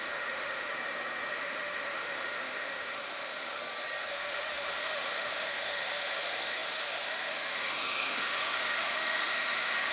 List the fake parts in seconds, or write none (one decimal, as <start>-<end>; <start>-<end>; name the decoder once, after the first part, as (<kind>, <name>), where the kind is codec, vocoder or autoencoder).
0.0-0.7 (autoencoder, DAC-VAE); 1.3-3.6; 4.1-9.9